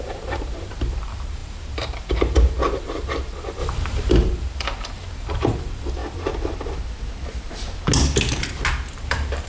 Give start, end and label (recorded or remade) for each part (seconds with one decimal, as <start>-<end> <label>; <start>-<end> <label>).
0.0-6.0 remade; 6.0-8.9 recorded; 8.9-9.5 remade